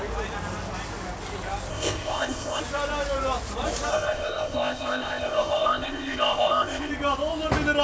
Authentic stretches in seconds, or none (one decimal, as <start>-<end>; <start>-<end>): 0.0-1.7; 2.6-3.9; 6.9-7.8